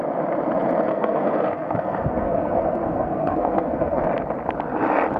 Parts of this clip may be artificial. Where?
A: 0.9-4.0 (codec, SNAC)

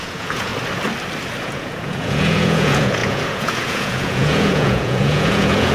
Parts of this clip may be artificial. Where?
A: 0.0-0.5 (vocoder, Vocos); 1.4-5.7

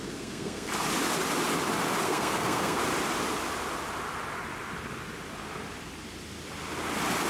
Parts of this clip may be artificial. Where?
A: 0.0-0.7 (codec, SNAC); 2.0-2.8

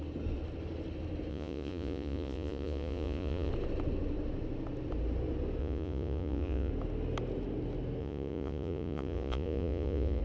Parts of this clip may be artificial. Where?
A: 1.3-3.5 (vocoder, Vocos); 5.6-6.7; 8.0-10.2

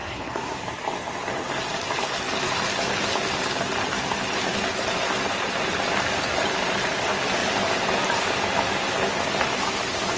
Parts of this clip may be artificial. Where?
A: 0.0-0.6 (codec, SNAC)

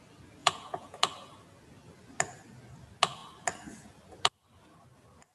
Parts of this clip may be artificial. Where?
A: 0.4-1.0 (vocoder, Vocos)

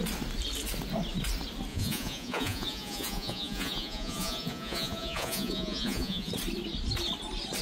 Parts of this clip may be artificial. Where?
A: 1.7-6.3 (vocoder, Vocos)